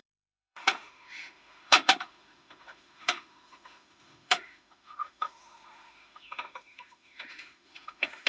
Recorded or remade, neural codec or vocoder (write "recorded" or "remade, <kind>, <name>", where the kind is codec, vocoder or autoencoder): remade, autoencoder, DAC-VAE